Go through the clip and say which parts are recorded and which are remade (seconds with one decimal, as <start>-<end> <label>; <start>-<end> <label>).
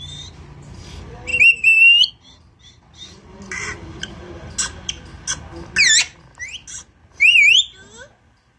0.0-8.6 recorded